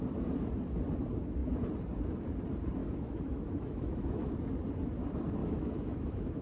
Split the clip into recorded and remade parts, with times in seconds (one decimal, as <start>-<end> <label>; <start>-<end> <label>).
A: 0.0-2.8 recorded; 2.8-4.3 remade; 4.3-5.4 recorded; 5.4-6.4 remade